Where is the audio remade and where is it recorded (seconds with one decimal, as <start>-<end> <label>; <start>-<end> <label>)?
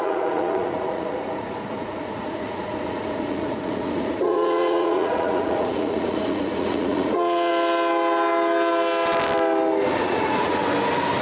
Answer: 0.0-7.5 remade; 7.5-10.0 recorded; 10.0-10.6 remade; 10.6-11.2 recorded